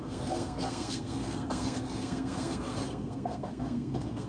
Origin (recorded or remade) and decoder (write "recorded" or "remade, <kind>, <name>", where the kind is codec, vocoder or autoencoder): remade, codec, SNAC